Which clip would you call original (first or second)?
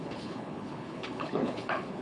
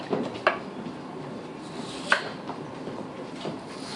second